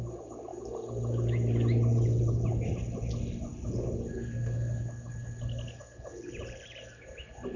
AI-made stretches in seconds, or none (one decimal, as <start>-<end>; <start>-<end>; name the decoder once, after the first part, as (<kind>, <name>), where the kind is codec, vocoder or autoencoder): none